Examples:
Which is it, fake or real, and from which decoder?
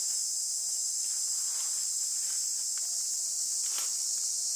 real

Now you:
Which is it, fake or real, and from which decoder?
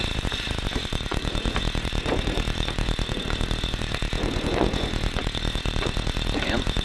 fake, vocoder, Vocos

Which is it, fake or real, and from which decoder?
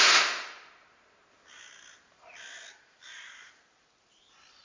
real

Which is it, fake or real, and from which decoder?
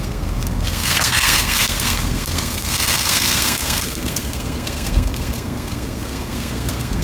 fake, codec, SNAC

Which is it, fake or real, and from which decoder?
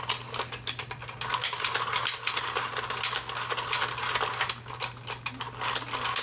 real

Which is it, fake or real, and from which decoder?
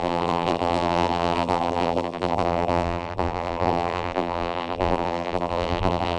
fake, vocoder, BigVGAN v2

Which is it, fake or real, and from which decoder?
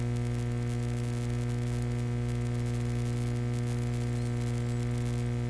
real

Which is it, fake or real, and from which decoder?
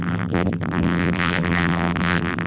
fake, vocoder, BigVGAN v2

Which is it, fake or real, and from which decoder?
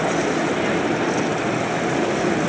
real